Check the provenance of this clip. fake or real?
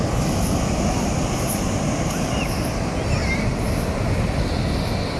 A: real